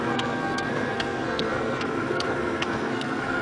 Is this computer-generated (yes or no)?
yes